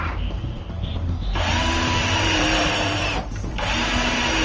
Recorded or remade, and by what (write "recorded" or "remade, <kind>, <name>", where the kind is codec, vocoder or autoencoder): remade, vocoder, BigVGAN v2